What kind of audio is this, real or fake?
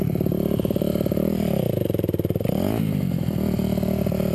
fake